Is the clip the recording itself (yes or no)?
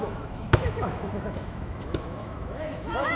no